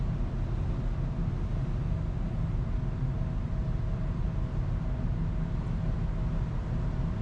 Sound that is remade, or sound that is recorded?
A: recorded